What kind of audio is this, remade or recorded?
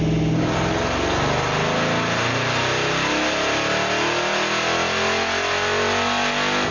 recorded